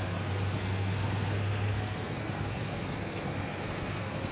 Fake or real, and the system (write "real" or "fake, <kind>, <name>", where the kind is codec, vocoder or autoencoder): fake, codec, SNAC